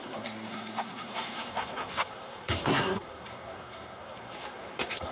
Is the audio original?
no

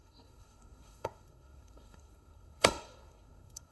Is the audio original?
no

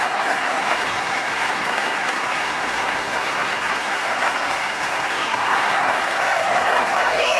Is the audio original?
no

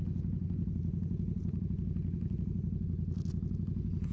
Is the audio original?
yes